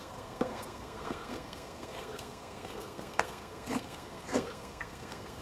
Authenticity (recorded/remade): remade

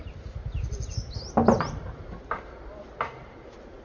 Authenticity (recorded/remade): recorded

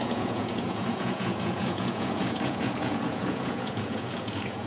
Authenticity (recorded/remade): remade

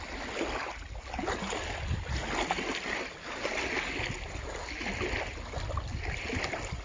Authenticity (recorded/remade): recorded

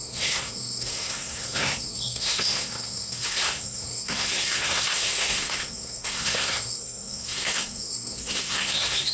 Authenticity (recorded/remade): remade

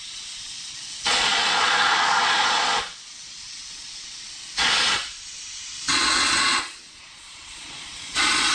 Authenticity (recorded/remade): remade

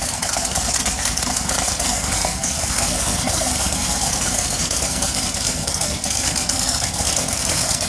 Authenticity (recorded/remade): remade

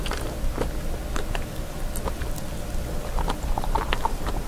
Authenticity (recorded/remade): recorded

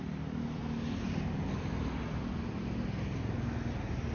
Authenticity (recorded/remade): recorded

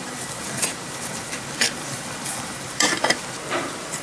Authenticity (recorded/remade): remade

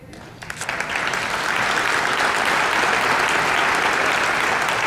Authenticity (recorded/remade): recorded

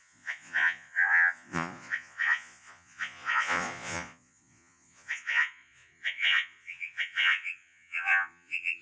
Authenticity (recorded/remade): remade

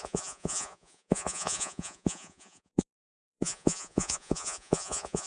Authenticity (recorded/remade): remade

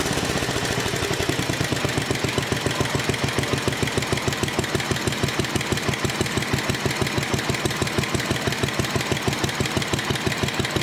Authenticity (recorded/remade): recorded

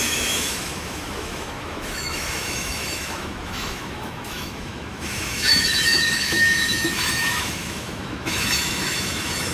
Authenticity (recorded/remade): remade